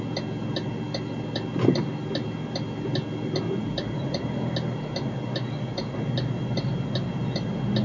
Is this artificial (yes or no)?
no